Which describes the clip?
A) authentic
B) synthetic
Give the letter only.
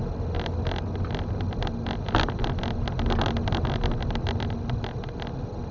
A